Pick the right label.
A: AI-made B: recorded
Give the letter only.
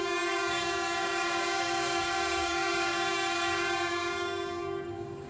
A